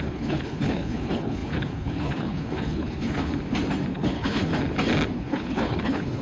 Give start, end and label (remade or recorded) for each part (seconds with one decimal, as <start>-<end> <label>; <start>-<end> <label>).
0.0-3.3 remade; 3.3-3.9 recorded; 3.9-4.5 remade; 4.5-5.1 recorded; 5.1-6.2 remade